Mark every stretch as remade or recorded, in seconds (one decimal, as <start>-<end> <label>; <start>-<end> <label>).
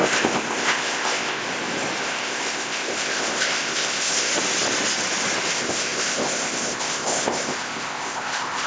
0.0-1.4 remade; 1.4-2.0 recorded; 2.0-4.3 remade; 4.3-5.5 recorded; 5.5-8.7 remade